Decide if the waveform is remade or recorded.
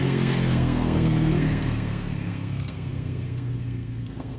remade